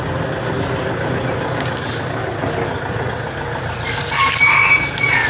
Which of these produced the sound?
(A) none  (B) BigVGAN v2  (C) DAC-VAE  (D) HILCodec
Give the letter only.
A